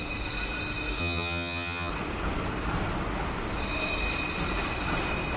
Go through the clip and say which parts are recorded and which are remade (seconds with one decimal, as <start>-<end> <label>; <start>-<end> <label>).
0.0-1.0 recorded; 1.0-1.9 remade; 1.9-5.4 recorded